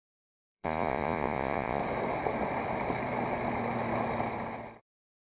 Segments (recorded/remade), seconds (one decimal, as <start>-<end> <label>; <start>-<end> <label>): 0.0-1.8 remade; 1.8-5.3 recorded